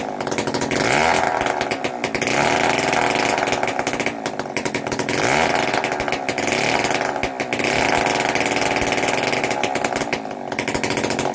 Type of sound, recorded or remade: recorded